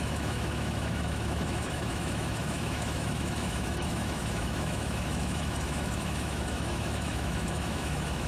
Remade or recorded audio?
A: remade